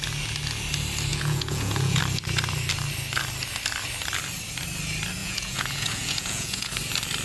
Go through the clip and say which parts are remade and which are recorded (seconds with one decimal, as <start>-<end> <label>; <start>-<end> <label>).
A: 0.0-1.1 recorded; 1.1-2.0 remade; 2.0-5.2 recorded; 5.2-6.7 remade; 6.7-7.2 recorded